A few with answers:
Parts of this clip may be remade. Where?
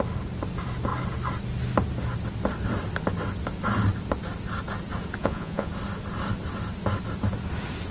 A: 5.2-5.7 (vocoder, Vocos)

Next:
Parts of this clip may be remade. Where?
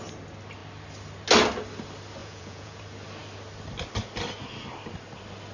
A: 2.2-2.8 (vocoder, Vocos)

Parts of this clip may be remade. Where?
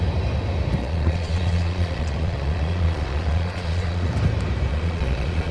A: 0.8-4.1 (vocoder, Vocos); 4.7-5.5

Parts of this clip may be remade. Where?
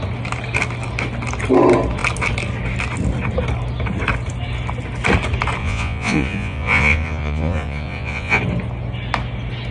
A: 5.6-8.4 (vocoder, Vocos)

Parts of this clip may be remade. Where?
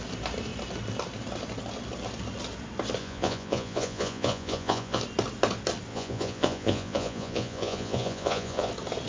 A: 3.0-5.0 (vocoder, Vocos); 5.9-8.7